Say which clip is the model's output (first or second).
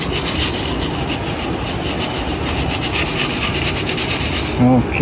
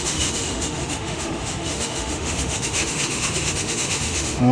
second